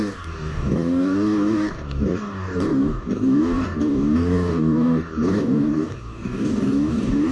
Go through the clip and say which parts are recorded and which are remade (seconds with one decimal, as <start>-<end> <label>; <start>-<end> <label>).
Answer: 0.0-7.3 remade